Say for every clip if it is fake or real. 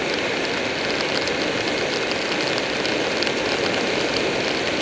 real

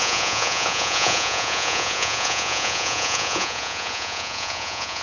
fake